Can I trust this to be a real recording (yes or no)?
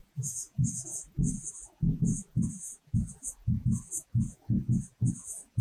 no